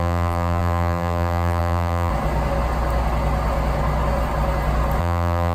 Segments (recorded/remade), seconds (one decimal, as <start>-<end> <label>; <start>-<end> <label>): 0.0-2.1 remade; 2.1-5.0 recorded; 5.0-5.5 remade